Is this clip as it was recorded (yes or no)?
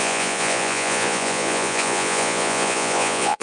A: no